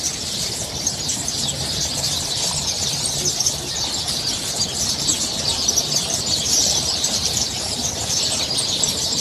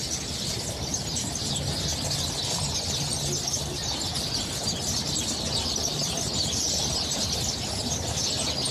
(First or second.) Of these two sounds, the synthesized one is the first